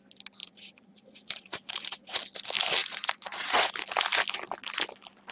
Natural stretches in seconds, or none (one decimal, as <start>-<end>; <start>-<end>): 0.0-0.4; 2.2-2.8; 3.7-5.3